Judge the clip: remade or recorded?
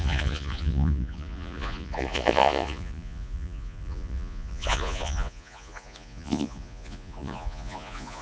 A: remade